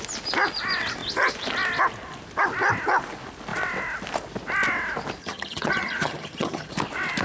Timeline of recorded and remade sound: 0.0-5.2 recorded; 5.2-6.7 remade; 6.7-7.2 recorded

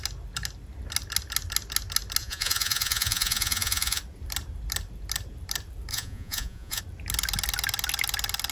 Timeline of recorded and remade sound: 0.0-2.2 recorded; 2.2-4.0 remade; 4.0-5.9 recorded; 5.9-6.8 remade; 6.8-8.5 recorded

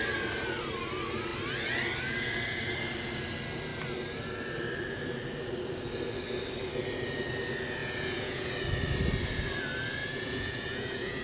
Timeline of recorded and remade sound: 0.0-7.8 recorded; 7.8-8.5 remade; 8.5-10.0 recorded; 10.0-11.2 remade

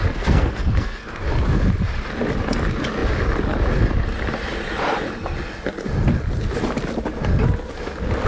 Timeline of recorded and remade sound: 0.0-1.2 remade; 1.2-8.3 recorded

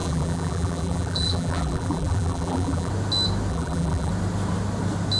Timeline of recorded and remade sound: 0.0-2.9 remade; 2.9-3.5 recorded; 3.5-4.1 remade; 4.1-5.2 recorded

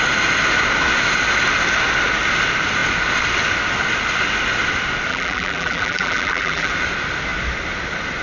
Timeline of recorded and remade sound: 0.0-5.1 recorded; 5.1-6.7 remade; 6.7-8.2 recorded

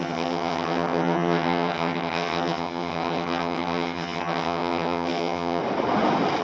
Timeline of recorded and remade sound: 0.0-5.6 remade; 5.6-6.4 recorded

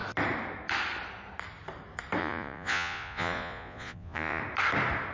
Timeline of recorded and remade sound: 0.0-2.2 recorded; 2.2-4.4 remade; 4.4-5.1 recorded